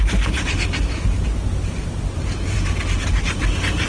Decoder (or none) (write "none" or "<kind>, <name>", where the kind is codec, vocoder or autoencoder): none